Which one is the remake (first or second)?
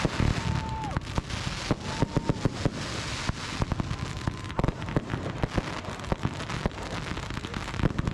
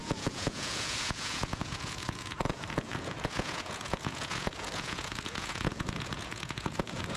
second